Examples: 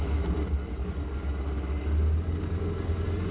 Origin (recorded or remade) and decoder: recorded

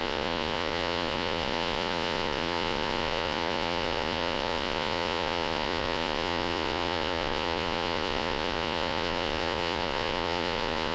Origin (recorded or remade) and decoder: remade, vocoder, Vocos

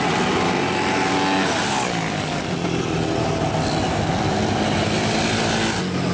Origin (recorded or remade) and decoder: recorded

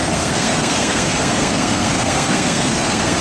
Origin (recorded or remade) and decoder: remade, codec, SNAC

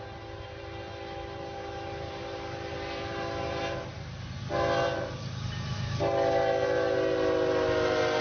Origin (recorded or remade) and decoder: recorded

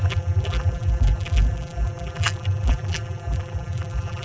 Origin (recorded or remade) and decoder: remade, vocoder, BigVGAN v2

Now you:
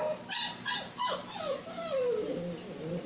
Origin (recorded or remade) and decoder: recorded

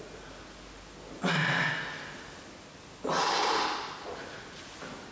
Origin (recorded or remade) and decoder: recorded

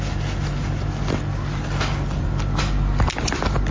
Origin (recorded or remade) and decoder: recorded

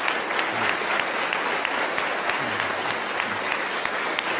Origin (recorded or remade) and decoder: recorded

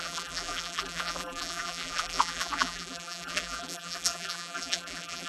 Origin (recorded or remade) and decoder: remade, vocoder, BigVGAN v2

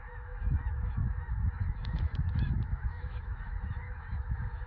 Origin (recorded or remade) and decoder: remade, autoencoder, DAC-VAE